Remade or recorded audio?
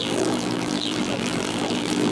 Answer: remade